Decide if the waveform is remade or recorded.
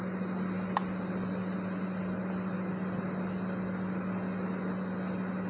recorded